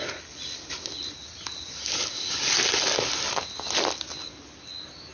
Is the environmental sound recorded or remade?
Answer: recorded